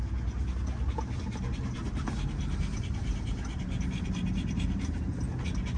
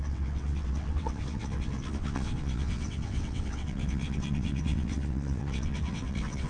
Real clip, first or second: first